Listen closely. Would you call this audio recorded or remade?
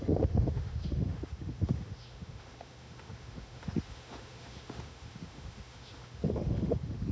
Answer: remade